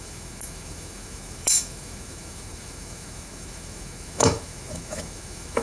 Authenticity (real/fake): fake